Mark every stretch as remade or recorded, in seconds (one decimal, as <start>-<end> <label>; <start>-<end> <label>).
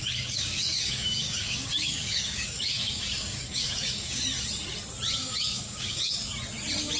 0.0-4.2 remade; 4.2-5.2 recorded; 5.2-6.3 remade; 6.3-7.0 recorded